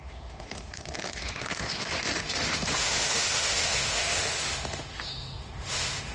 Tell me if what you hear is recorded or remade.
remade